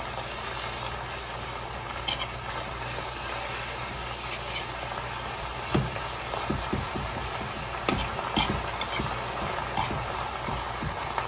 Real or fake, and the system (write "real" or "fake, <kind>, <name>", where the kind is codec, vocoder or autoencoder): real